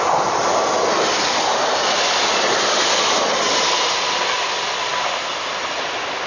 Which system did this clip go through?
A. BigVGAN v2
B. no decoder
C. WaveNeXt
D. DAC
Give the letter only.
B